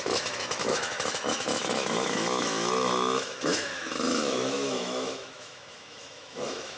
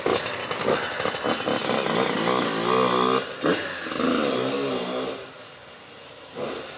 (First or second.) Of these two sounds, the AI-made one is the first